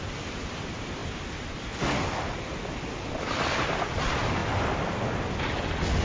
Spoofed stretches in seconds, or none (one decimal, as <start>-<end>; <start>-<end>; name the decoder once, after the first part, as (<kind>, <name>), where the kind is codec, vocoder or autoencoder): none